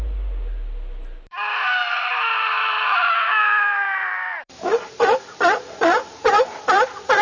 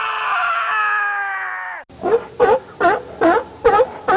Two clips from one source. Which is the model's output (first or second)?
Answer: first